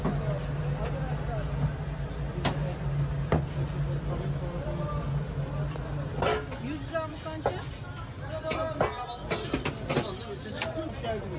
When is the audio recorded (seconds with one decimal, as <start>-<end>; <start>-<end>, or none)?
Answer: 0.0-11.4